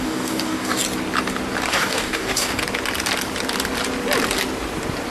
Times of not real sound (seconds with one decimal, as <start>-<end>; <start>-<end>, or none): 0.0-0.8; 1.7-2.6